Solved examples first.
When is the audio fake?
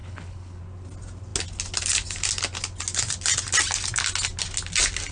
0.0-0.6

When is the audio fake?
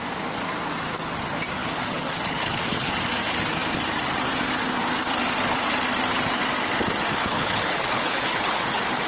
1.6-2.9; 7.2-9.1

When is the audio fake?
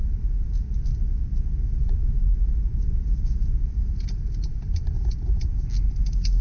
none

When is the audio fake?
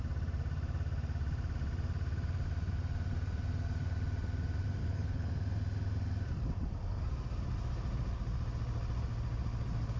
4.8-5.3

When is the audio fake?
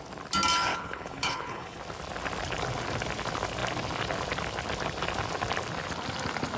0.7-1.8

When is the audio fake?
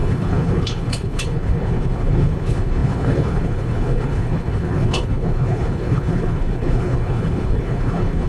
0.0-8.3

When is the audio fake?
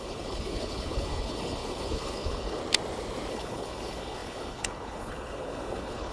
0.0-2.6; 3.3-6.1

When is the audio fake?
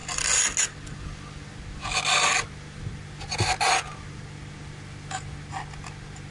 none